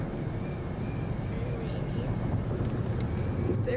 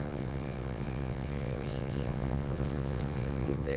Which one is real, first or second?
first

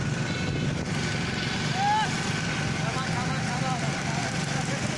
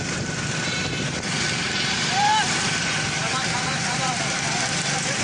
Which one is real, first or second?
first